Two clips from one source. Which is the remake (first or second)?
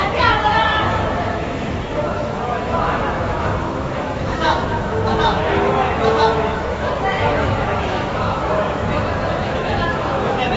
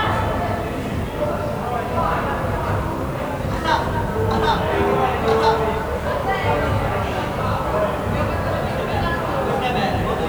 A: first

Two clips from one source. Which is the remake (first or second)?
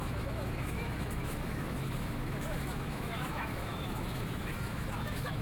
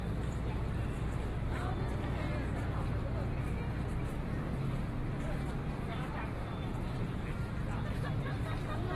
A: first